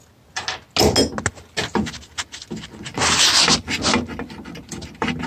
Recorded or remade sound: recorded